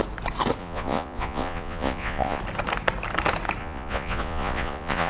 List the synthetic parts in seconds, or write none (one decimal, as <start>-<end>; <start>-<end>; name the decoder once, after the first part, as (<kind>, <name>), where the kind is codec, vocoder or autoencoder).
0.6-2.4 (vocoder, Vocos); 3.6-5.1